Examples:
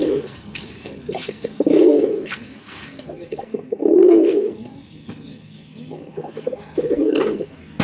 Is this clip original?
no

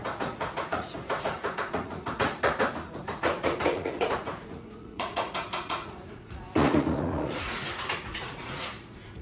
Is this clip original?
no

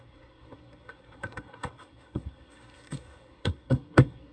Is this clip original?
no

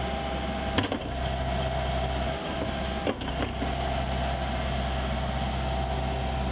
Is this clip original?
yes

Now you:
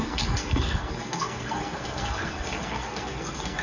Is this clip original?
no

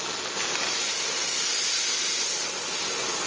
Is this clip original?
yes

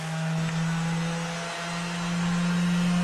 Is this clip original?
yes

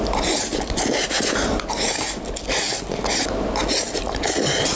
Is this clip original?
yes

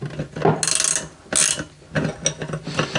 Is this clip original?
yes